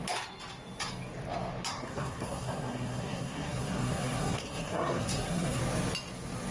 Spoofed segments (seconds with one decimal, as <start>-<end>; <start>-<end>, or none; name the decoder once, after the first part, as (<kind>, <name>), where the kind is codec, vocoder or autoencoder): 1.7-5.6 (codec, SNAC)